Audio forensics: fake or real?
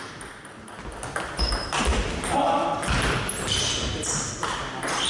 real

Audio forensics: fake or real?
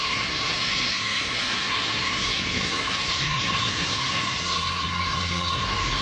fake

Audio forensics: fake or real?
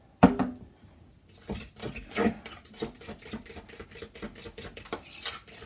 real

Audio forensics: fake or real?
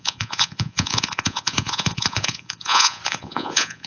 fake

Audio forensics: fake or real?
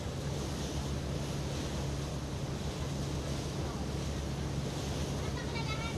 real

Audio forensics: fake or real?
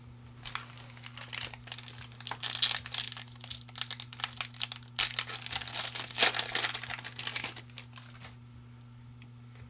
real